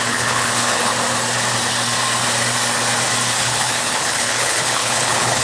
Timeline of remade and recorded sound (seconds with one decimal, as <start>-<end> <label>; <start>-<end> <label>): 0.0-0.9 remade; 0.9-3.4 recorded; 3.4-5.4 remade